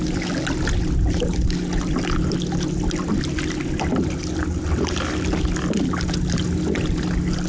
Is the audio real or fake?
real